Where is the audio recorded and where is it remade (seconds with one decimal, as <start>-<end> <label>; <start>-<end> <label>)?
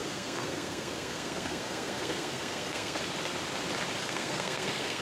0.0-3.0 remade; 3.0-4.0 recorded; 4.0-5.0 remade